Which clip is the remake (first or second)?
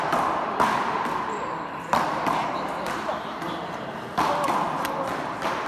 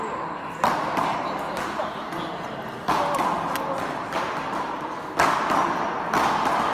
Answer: first